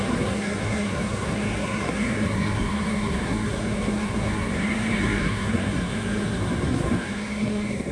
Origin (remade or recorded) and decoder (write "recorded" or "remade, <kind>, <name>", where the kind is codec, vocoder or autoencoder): remade, codec, SNAC